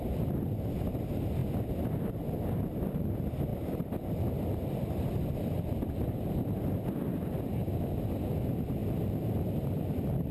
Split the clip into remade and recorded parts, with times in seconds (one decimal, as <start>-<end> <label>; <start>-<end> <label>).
0.0-3.5 recorded; 3.5-6.7 remade; 6.7-8.8 recorded; 8.8-10.3 remade